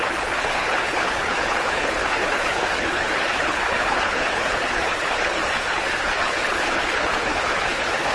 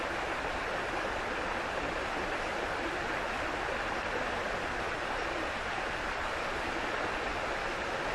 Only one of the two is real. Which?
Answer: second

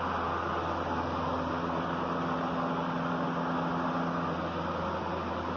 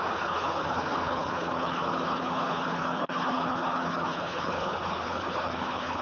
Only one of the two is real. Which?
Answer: first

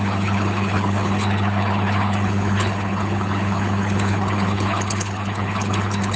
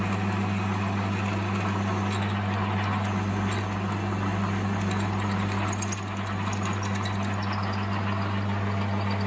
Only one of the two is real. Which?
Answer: second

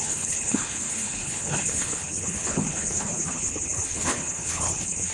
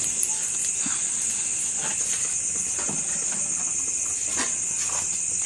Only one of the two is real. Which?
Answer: second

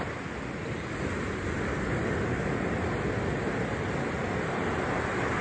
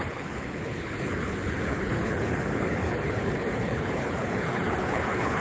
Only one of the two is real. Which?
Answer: first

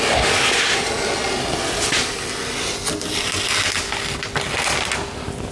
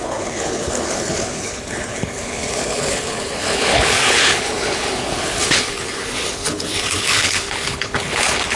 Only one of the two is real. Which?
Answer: first